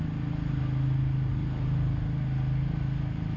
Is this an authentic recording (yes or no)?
yes